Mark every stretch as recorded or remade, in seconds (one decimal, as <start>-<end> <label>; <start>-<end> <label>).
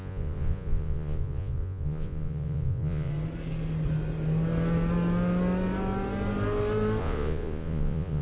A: 0.0-3.1 remade; 3.1-7.0 recorded; 7.0-8.2 remade